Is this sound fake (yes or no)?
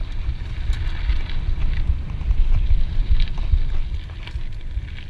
no